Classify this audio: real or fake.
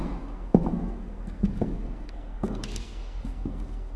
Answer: fake